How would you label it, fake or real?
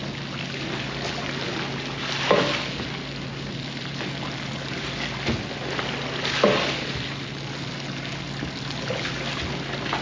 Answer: real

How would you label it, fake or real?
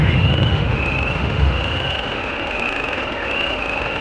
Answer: fake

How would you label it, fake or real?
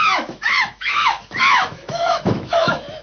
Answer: fake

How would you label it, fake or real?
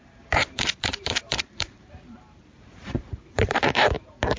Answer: fake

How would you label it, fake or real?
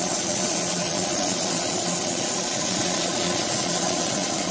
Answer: fake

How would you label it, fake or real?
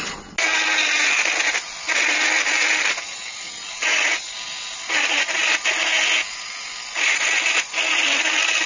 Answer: real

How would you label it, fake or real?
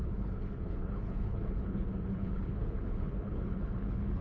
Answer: fake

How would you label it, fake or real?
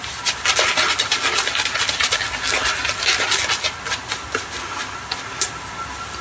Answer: real